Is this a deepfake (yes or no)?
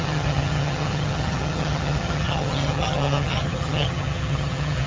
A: yes